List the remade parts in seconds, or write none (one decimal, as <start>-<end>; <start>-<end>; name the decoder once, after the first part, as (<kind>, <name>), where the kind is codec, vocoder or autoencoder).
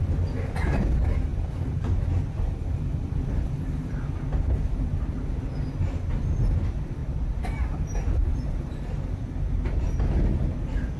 none